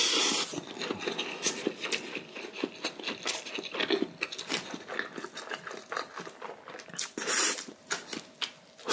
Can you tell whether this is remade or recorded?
recorded